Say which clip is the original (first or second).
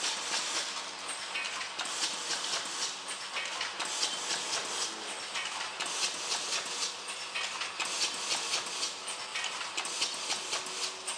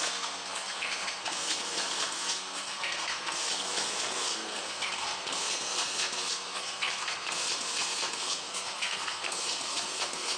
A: first